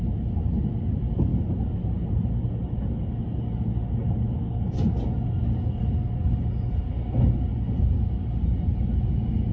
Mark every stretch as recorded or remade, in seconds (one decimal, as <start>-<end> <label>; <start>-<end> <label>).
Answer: 0.0-9.5 recorded